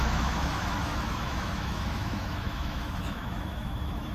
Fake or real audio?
fake